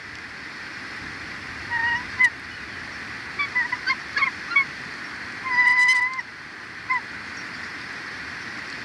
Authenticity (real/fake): real